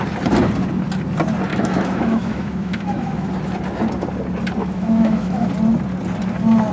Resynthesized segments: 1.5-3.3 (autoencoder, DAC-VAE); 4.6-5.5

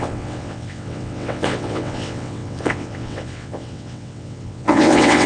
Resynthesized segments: 0.0-5.3 (vocoder, WaveNeXt)

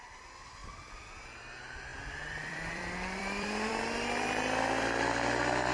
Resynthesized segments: 0.6-1.1 (vocoder, BigVGAN v2); 1.9-4.6

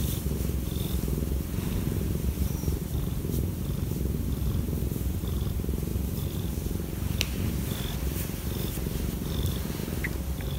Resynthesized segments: 5.9-7.5 (vocoder, BigVGAN v2); 9.8-10.6

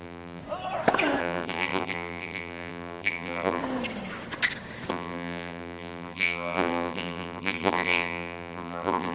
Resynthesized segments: 0.0-0.4 (vocoder, BigVGAN v2); 1.2-3.6; 4.9-9.1

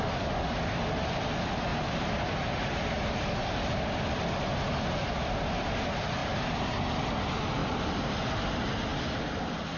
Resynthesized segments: 1.7-3.7 (vocoder, BigVGAN v2); 6.2-7.0; 7.6-8.2

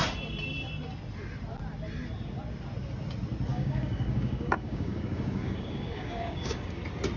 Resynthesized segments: 3.5-6.8 (codec, DAC)

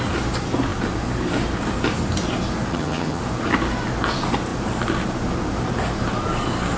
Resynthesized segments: 2.7-3.2 (vocoder, HiFi-GAN)